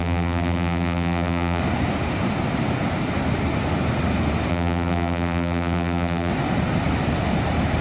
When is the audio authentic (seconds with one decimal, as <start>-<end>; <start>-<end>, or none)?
1.6-4.5; 6.3-7.8